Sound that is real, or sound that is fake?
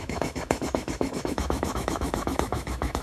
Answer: fake